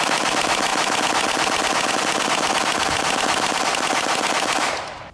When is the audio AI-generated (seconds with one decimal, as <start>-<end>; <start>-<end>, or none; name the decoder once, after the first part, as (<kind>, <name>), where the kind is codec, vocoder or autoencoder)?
none